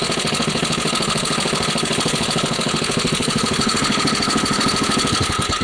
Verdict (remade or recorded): remade